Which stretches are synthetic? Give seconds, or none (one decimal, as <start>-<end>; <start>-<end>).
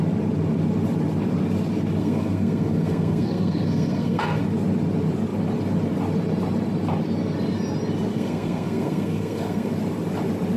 2.0-4.4; 8.1-9.7